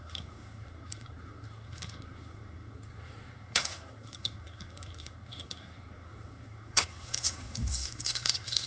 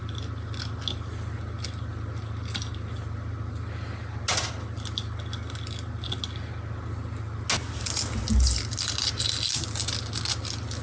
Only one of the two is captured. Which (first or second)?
second